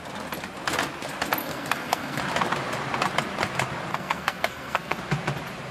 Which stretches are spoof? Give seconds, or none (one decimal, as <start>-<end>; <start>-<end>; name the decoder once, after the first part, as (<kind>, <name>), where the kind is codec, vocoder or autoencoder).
1.4-2.2 (codec, SNAC); 3.9-5.0